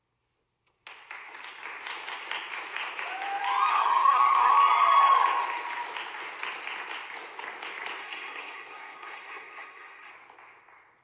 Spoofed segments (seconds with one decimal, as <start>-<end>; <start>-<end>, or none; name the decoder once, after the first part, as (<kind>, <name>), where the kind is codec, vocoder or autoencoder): 3.7-4.5 (codec, SNAC); 8.0-10.1